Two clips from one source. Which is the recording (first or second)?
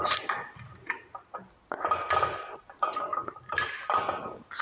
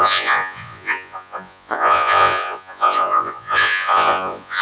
first